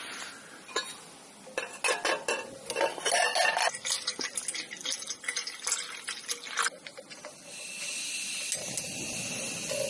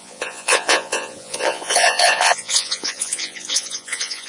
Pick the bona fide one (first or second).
first